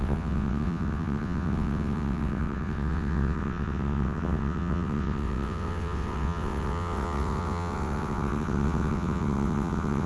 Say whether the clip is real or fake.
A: fake